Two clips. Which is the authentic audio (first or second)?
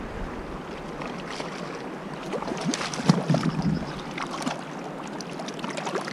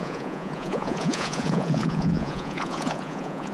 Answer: first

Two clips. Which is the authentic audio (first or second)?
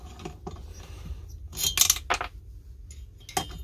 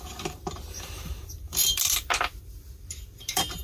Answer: first